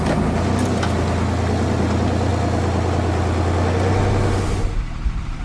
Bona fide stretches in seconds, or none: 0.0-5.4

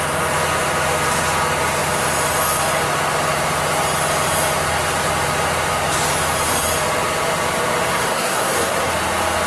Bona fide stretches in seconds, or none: 0.0-7.9; 8.9-9.5